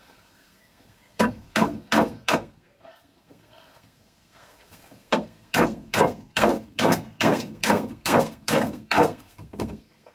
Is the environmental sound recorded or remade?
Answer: remade